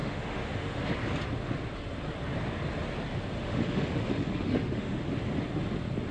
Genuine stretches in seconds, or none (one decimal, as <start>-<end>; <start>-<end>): 0.8-3.4; 5.0-6.1